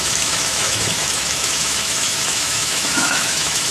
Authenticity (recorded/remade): remade